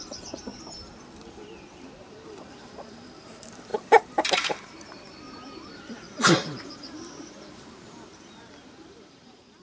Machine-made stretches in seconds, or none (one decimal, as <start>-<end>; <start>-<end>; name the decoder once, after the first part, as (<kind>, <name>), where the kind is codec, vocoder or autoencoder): 0.0-0.5 (vocoder, BigVGAN v2); 2.5-9.6

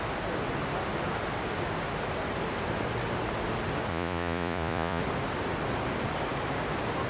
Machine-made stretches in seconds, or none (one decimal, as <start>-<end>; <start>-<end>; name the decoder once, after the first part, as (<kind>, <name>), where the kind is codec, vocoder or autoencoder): 3.9-5.0 (vocoder, Vocos)

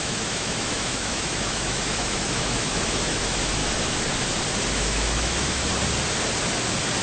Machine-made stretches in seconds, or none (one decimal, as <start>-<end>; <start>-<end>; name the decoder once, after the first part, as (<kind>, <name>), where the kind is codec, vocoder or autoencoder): 0.0-3.6 (autoencoder, DAC-VAE); 4.7-5.7